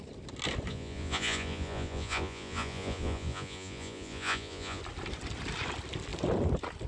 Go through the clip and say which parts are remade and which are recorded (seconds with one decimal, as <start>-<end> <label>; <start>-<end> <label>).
0.0-0.7 recorded; 0.7-4.8 remade; 4.8-6.9 recorded